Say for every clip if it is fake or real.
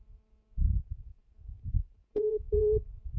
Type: fake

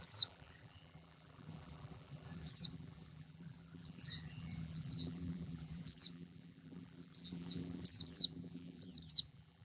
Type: fake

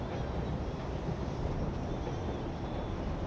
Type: real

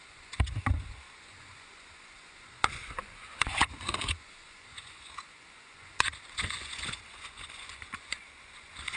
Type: fake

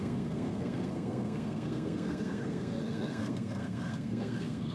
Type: fake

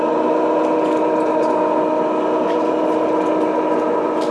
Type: real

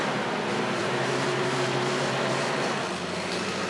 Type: fake